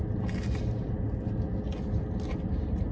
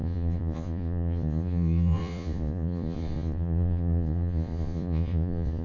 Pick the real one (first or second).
first